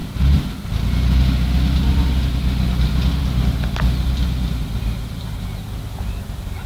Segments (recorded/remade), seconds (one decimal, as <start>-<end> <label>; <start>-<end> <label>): 0.0-6.7 recorded